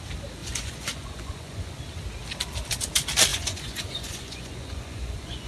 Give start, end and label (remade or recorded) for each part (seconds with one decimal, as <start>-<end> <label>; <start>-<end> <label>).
0.0-0.4 recorded; 0.4-1.7 remade; 1.7-3.3 recorded; 3.3-5.5 remade